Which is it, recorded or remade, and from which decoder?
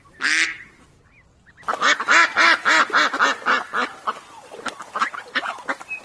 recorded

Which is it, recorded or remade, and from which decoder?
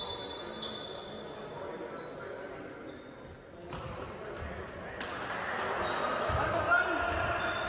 recorded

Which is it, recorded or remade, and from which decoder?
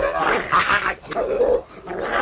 recorded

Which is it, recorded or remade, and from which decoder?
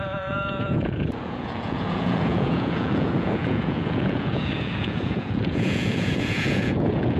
remade, vocoder, Vocos